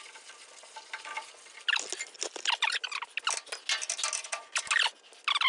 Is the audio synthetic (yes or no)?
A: no